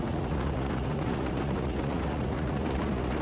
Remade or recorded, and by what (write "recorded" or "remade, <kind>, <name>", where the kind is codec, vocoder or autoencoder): remade, vocoder, Vocos